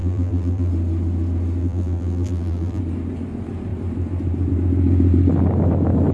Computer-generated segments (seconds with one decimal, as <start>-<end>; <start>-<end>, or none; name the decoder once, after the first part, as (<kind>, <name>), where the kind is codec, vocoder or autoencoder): 0.0-0.7 (vocoder, BigVGAN v2); 1.6-2.8